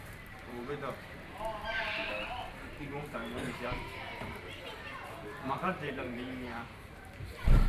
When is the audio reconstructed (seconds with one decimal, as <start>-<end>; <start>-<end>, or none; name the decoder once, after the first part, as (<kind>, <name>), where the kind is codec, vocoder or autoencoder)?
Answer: 0.0-7.7 (vocoder, BigVGAN v2)